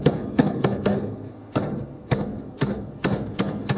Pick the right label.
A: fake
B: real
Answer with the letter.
A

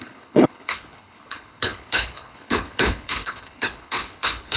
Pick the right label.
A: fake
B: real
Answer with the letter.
A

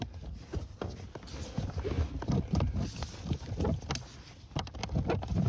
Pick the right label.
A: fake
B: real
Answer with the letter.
B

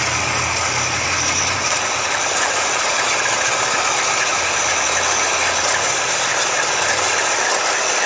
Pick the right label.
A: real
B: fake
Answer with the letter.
A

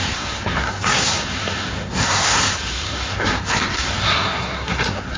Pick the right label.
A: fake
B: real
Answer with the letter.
A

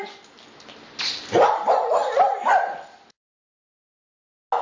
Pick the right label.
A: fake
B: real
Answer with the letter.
B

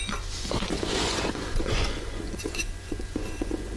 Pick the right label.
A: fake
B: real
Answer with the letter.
A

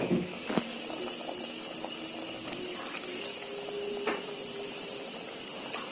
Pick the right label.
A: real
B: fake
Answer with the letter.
A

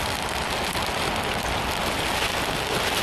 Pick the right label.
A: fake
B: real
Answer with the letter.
B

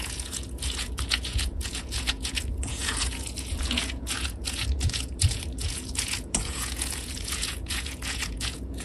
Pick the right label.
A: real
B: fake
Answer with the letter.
B